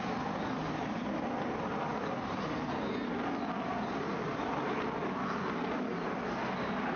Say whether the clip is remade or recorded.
recorded